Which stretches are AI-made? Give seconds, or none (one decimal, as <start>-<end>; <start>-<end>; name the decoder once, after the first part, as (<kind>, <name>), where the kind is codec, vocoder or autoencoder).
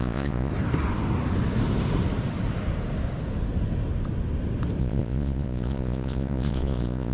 0.0-0.5 (vocoder, Vocos); 4.8-7.1